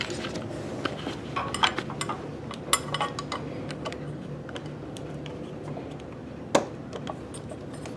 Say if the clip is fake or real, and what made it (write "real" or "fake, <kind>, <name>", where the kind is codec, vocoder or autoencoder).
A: real